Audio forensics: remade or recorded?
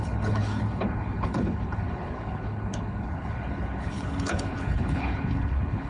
remade